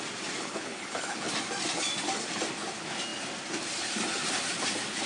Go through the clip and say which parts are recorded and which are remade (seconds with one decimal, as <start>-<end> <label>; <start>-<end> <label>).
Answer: 0.0-0.4 recorded; 0.4-1.3 remade; 1.3-5.1 recorded